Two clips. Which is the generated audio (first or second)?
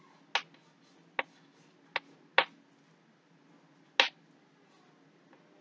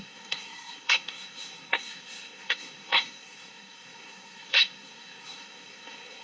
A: second